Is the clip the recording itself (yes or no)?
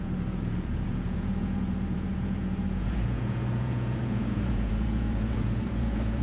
no